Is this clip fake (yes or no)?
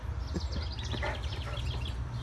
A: no